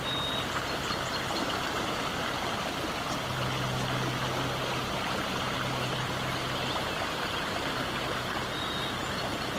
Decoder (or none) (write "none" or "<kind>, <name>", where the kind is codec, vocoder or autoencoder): none